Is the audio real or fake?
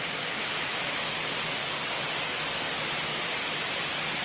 real